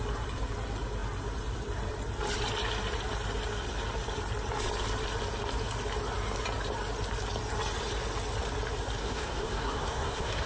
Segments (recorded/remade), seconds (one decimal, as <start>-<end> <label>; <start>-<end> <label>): 0.0-9.0 recorded; 9.0-10.5 remade